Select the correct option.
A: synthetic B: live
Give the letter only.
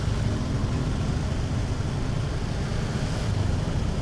B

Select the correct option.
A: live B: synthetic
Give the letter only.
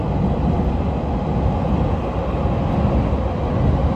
A